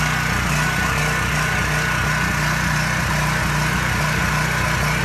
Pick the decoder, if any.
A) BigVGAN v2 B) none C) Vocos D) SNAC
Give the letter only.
B